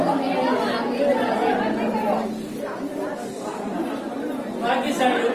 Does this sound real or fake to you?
real